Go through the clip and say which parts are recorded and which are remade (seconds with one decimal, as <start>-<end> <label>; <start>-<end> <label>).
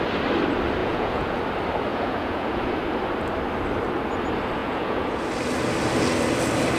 0.0-0.8 recorded; 0.8-1.4 remade; 1.4-1.9 recorded; 1.9-2.8 remade; 2.8-4.6 recorded; 4.6-5.2 remade; 5.2-6.8 recorded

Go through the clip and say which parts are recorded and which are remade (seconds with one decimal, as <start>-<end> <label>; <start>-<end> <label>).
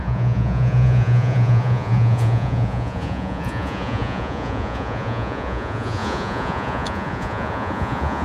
0.0-8.2 remade